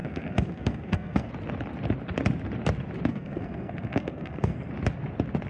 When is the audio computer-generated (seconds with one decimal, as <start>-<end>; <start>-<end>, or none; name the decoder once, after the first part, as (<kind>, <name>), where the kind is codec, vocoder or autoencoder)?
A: 0.0-1.3 (codec, SNAC); 3.1-4.7